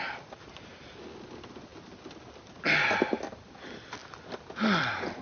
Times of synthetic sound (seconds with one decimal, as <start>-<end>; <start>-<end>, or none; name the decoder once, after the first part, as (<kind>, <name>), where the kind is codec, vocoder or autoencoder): none